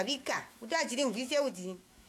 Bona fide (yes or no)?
no